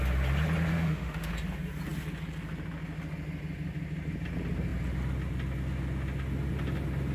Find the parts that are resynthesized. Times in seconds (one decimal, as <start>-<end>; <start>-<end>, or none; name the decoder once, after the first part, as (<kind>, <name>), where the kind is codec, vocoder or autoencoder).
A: 0.7-1.3 (autoencoder, DAC-VAE)